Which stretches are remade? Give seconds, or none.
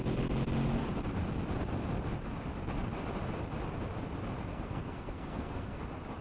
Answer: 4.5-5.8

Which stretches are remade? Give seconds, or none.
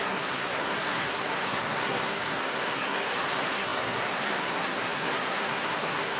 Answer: 0.0-6.2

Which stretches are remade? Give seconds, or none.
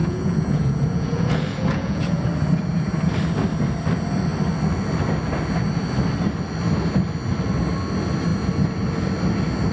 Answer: 0.0-2.3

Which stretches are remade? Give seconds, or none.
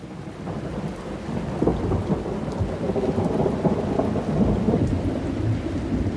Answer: none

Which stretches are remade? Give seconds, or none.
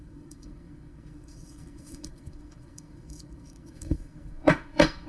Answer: 0.0-5.1